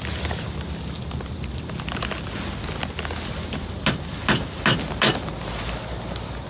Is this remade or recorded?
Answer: recorded